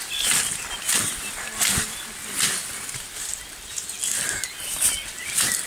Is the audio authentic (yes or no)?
yes